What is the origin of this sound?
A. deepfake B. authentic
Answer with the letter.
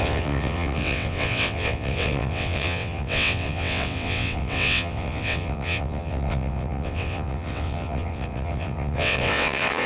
A